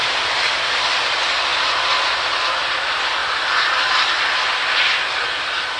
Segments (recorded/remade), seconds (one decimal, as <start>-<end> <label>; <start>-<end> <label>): 0.0-0.7 remade; 0.7-3.2 recorded; 3.2-5.8 remade